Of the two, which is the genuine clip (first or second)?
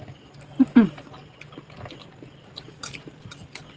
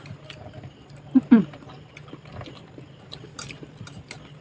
first